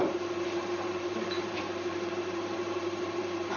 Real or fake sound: fake